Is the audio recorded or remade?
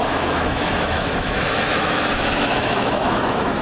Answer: remade